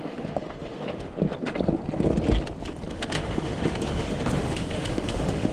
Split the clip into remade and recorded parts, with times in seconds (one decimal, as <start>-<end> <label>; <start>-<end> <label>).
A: 0.0-1.1 remade; 1.1-2.9 recorded; 2.9-5.5 remade